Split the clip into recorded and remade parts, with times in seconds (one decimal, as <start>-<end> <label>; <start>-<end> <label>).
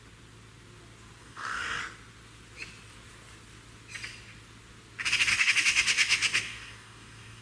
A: 0.0-1.2 recorded; 1.2-1.8 remade; 1.8-5.3 recorded; 5.3-7.4 remade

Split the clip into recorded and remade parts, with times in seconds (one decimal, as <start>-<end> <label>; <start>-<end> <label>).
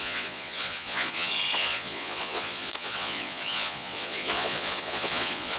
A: 0.0-5.6 remade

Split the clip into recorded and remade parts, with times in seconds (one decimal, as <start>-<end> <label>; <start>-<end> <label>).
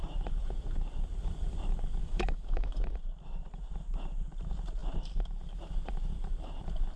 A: 0.0-2.0 recorded; 2.0-2.9 remade; 2.9-7.0 recorded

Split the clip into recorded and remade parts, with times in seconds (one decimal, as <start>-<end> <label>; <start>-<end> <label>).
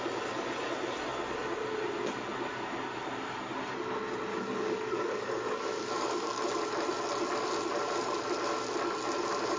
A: 0.0-4.3 recorded; 4.3-6.4 remade; 6.4-9.6 recorded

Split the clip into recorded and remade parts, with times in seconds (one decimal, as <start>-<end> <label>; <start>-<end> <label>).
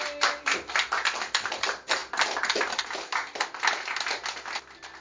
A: 0.0-5.0 recorded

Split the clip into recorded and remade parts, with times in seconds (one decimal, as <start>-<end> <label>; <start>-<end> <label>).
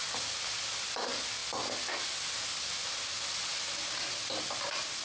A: 0.0-5.0 recorded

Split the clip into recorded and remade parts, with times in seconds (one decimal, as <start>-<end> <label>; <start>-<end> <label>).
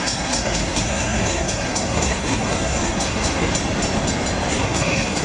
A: 0.0-3.5 remade; 3.5-4.5 recorded; 4.5-5.2 remade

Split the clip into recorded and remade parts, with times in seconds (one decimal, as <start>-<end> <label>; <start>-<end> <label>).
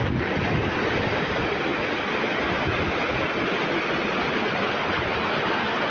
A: 0.0-5.9 recorded